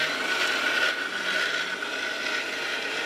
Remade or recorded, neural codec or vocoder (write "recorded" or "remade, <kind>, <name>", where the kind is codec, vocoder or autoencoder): recorded